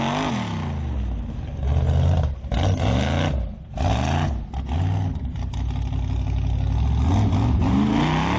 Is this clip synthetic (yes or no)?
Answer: no